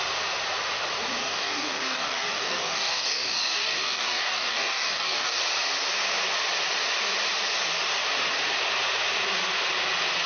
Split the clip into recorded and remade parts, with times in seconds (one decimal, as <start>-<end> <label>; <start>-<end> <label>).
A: 0.0-1.2 recorded; 1.2-5.4 remade; 5.4-10.3 recorded